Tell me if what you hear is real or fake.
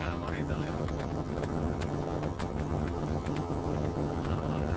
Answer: fake